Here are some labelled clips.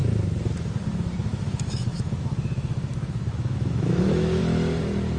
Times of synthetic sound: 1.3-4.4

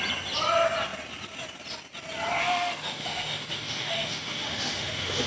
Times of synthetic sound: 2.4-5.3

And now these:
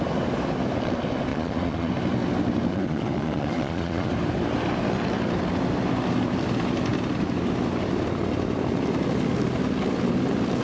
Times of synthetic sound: 1.3-1.9; 2.7-4.1